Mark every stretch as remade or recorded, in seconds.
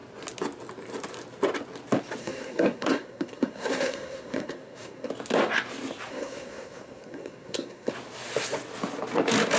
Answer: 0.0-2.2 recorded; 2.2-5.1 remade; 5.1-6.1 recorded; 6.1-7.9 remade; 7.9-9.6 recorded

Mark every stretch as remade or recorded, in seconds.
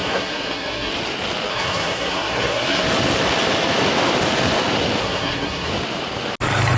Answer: 0.0-0.9 remade; 0.9-1.5 recorded; 1.5-2.8 remade; 2.8-5.0 recorded; 5.0-5.7 remade; 5.7-6.8 recorded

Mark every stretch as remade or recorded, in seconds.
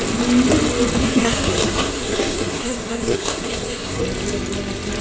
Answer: 0.0-1.0 recorded; 1.0-4.0 remade; 4.0-5.0 recorded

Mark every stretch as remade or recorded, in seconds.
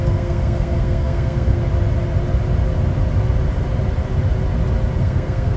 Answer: 0.0-1.6 remade; 1.6-5.0 recorded; 5.0-5.6 remade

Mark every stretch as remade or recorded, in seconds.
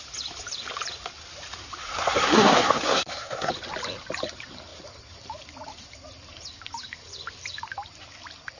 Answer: 0.0-1.8 recorded; 1.8-3.5 remade; 3.5-8.6 recorded